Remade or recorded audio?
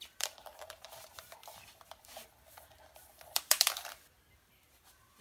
remade